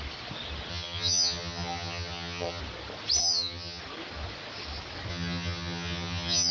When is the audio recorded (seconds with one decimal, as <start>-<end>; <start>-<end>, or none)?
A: 0.0-0.7; 2.6-3.2; 3.8-5.1